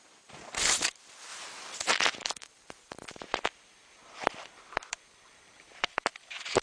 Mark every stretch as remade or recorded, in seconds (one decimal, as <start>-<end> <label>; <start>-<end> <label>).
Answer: 0.0-1.3 remade; 1.3-1.8 recorded; 1.8-3.5 remade; 3.5-5.5 recorded; 5.5-6.6 remade